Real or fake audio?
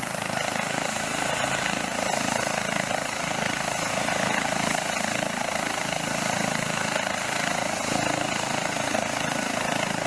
real